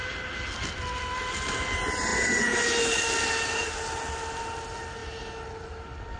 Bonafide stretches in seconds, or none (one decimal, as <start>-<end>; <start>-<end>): 0.0-6.2